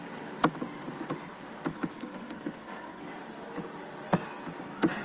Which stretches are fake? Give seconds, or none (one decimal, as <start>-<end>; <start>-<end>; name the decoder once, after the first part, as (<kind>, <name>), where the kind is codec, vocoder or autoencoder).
1.7-3.0 (codec, SNAC)